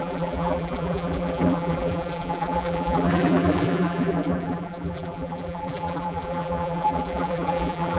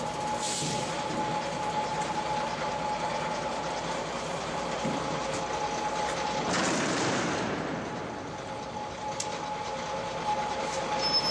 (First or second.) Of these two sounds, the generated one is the first